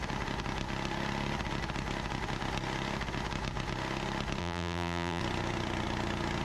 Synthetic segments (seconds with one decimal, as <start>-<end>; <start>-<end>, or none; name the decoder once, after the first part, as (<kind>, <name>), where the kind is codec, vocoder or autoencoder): 4.4-5.2 (vocoder, BigVGAN v2)